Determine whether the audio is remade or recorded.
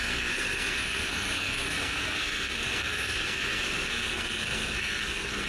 remade